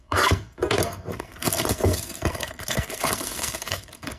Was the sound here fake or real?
fake